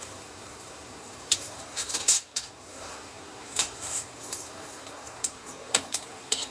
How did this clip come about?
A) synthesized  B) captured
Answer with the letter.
A